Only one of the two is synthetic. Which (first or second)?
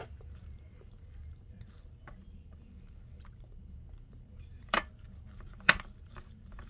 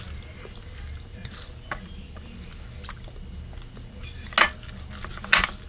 first